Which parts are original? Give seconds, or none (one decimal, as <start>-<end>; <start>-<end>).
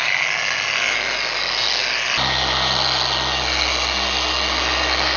0.0-5.2